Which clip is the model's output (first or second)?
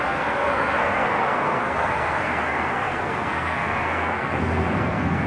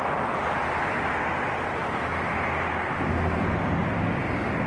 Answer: first